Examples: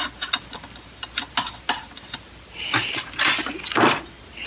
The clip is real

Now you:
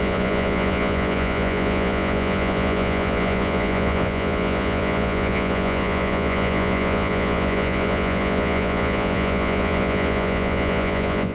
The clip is fake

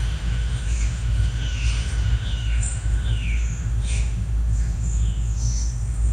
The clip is fake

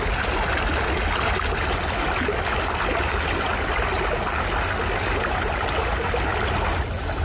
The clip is real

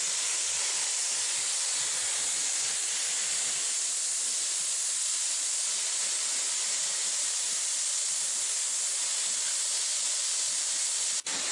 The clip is real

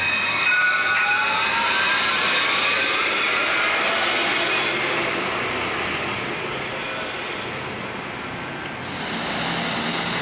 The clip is real